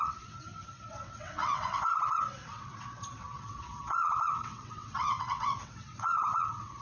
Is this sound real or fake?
fake